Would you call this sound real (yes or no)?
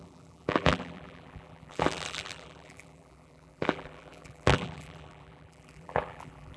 no